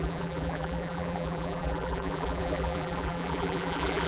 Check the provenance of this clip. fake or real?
fake